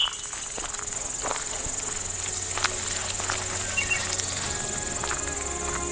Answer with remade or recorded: recorded